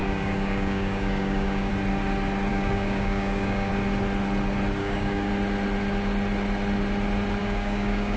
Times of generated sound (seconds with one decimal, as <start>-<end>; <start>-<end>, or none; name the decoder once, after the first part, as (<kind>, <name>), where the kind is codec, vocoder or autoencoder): 0.0-1.7 (codec, DAC); 2.5-3.7; 4.8-5.3; 7.4-8.2